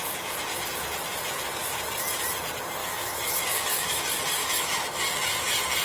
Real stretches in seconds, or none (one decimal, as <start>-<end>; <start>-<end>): 0.0-2.8; 4.0-4.4; 5.0-5.8